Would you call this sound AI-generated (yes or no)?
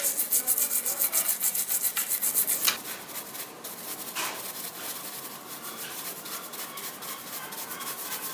no